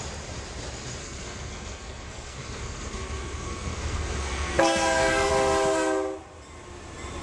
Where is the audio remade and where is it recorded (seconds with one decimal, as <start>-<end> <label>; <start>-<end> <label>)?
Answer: 0.0-1.0 recorded; 1.0-5.3 remade; 5.3-7.2 recorded